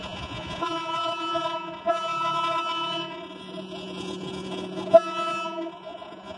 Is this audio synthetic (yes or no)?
yes